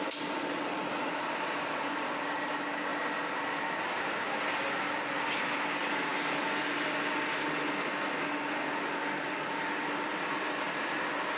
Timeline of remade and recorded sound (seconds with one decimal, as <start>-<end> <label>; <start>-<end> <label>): 0.0-11.4 recorded